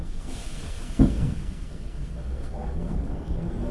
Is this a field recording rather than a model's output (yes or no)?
no